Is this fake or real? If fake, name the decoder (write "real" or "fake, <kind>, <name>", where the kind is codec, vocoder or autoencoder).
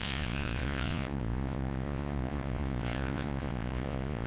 fake, vocoder, Vocos